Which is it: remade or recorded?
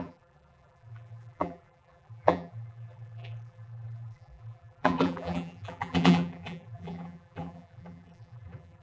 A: remade